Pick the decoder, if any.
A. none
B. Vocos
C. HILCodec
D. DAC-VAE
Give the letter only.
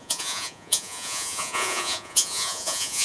B